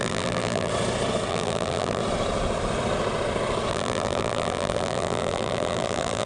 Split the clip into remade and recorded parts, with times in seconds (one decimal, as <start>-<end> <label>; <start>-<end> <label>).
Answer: 0.0-0.7 remade; 0.7-1.3 recorded; 1.3-2.0 remade; 2.0-3.7 recorded; 3.7-6.3 remade